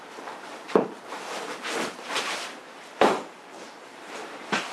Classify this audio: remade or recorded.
remade